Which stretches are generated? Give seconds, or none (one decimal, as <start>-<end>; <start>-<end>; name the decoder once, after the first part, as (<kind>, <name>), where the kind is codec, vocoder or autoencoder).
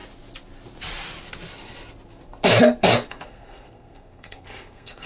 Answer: 3.1-5.1 (codec, SNAC)